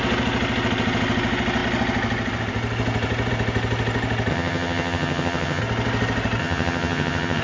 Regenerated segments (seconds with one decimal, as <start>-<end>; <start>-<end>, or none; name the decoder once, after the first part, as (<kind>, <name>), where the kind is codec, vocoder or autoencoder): 4.3-5.6 (vocoder, HiFi-GAN); 6.4-7.4